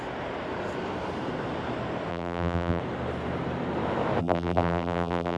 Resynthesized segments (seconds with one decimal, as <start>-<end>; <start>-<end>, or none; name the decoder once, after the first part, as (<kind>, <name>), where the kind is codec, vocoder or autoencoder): 2.1-2.8 (vocoder, BigVGAN v2); 4.2-5.4